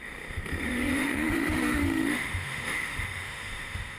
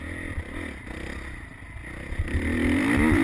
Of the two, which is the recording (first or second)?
second